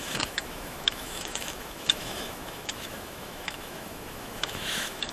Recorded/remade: remade